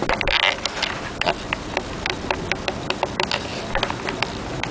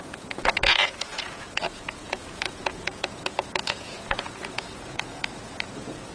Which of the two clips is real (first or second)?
first